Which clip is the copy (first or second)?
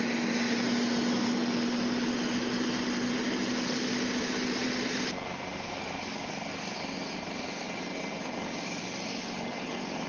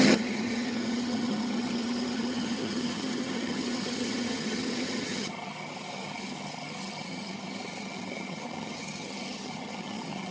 second